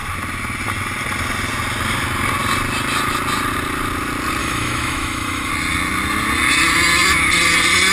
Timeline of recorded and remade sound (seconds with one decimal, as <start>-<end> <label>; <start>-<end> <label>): 0.0-4.4 recorded; 4.4-5.5 remade; 5.5-7.9 recorded